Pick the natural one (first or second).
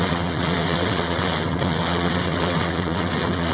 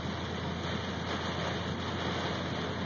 second